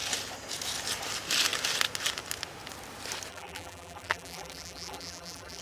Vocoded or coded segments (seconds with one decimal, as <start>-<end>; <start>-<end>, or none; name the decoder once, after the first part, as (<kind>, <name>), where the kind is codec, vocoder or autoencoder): 3.3-5.6 (vocoder, BigVGAN v2)